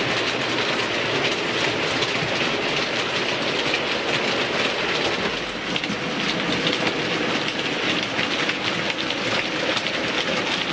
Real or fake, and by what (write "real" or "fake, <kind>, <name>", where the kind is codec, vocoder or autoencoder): real